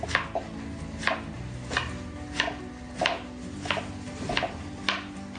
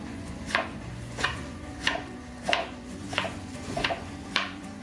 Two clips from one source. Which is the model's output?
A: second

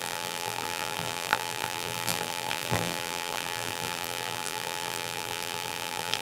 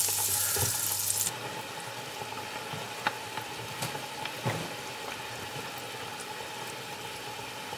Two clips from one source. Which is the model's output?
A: first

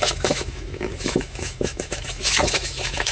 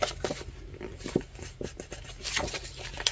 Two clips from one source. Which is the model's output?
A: first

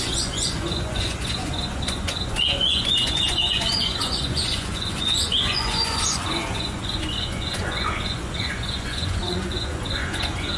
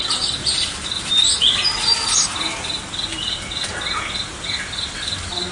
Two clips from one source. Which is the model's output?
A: first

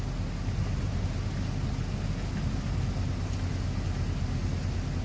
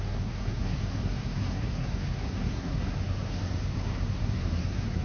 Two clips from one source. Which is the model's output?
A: second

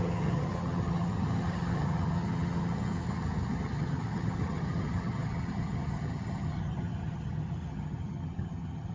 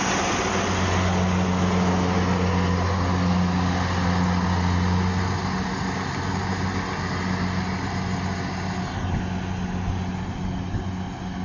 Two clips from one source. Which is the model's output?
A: first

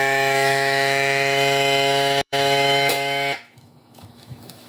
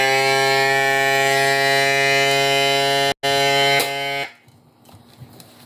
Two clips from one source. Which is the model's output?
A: first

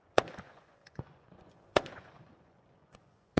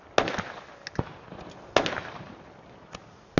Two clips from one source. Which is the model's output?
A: first